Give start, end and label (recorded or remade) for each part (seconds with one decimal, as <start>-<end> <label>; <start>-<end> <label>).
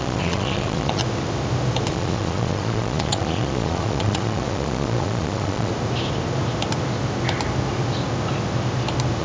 0.0-1.0 remade; 1.0-1.9 recorded; 1.9-5.7 remade; 5.7-9.2 recorded